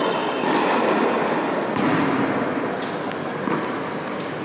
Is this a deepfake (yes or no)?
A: no